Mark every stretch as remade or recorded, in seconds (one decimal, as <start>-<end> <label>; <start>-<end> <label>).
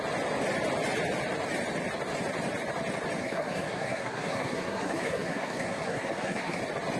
0.0-3.2 recorded; 3.2-6.6 remade; 6.6-7.0 recorded